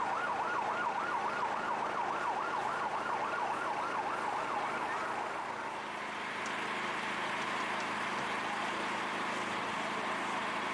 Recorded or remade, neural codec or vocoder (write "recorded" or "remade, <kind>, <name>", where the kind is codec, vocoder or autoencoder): recorded